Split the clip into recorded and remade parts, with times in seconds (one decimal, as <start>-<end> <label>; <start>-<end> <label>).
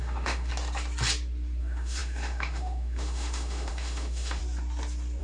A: 0.0-0.5 remade; 0.5-1.6 recorded; 1.6-4.4 remade; 4.4-5.2 recorded